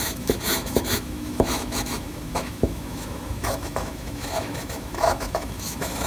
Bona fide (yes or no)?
no